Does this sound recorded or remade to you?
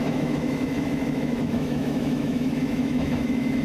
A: remade